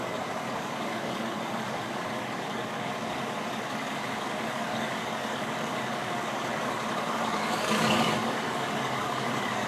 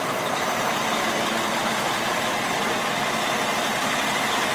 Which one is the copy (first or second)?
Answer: first